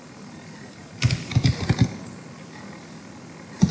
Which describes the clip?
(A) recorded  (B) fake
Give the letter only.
A